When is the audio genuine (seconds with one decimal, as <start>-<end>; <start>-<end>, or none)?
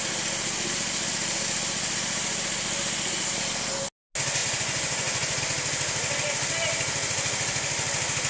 0.0-4.4; 5.4-8.3